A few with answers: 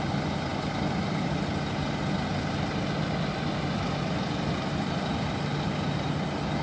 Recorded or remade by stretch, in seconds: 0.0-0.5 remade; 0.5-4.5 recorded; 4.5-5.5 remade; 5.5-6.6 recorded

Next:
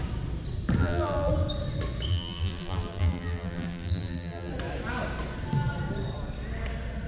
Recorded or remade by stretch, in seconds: 0.0-0.8 recorded; 0.8-1.3 remade; 1.3-2.1 recorded; 2.1-4.5 remade; 4.5-7.1 recorded

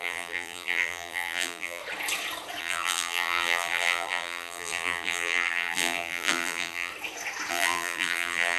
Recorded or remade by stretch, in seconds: 0.0-1.8 remade; 1.8-2.6 recorded; 2.6-6.9 remade; 6.9-7.5 recorded; 7.5-8.6 remade

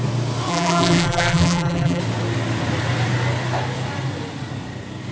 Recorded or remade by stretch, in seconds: 0.0-0.5 recorded; 0.5-2.0 remade; 2.0-5.1 recorded